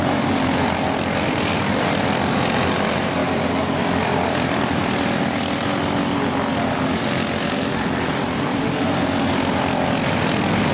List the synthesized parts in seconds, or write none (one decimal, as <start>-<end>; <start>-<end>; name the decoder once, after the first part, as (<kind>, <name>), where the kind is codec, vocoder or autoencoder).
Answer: 0.0-1.5 (vocoder, BigVGAN v2); 2.0-3.2; 3.8-4.8; 7.0-8.5; 10.0-10.7